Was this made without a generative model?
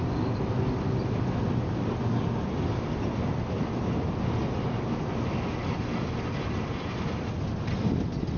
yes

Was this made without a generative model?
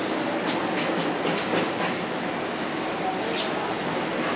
yes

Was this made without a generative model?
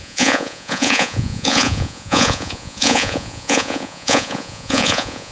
no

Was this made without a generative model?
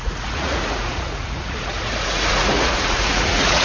no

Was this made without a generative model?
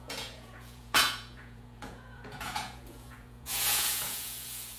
no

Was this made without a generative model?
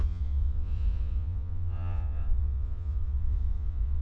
no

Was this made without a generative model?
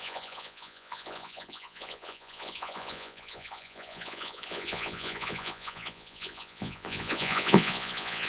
no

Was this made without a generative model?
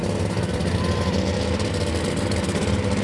yes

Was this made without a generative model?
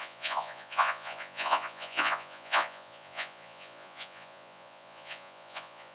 no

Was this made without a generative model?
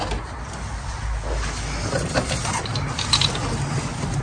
yes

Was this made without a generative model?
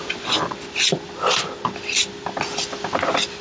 yes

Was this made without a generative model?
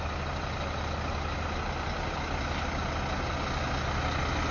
yes